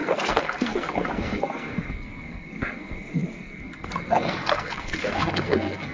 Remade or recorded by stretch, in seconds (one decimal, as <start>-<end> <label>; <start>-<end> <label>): 0.0-5.9 remade